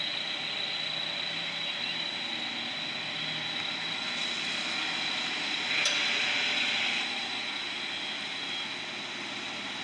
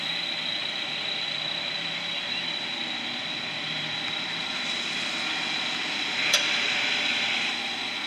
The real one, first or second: first